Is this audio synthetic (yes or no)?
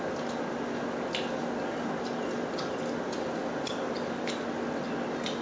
no